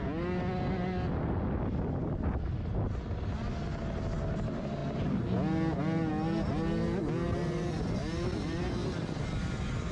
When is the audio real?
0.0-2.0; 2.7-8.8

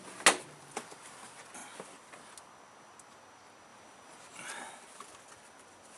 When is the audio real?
0.0-6.0

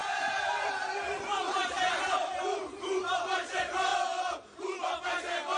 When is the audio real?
3.9-5.6

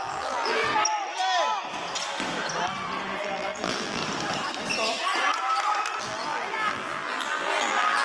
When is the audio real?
0.6-3.2; 4.0-6.0

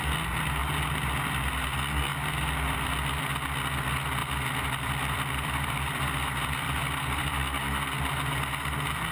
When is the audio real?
0.0-2.1; 3.2-4.2; 7.6-9.1